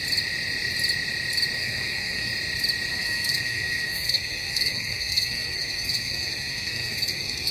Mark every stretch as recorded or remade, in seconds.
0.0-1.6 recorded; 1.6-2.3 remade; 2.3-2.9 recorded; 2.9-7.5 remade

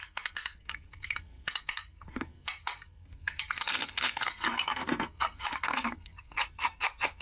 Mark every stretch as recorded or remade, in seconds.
0.0-7.2 remade

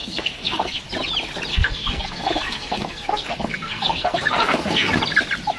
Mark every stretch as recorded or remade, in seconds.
0.0-0.8 remade; 0.8-1.5 recorded; 1.5-4.9 remade; 4.9-5.6 recorded

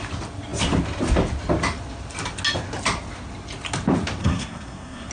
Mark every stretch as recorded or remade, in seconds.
0.0-4.2 recorded; 4.2-5.1 remade

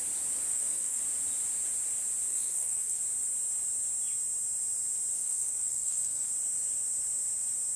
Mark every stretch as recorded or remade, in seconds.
0.0-0.5 recorded; 0.5-1.0 remade; 1.0-2.3 recorded; 2.3-3.0 remade; 3.0-5.1 recorded; 5.1-6.3 remade; 6.3-7.8 recorded